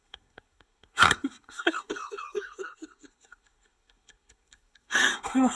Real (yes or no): no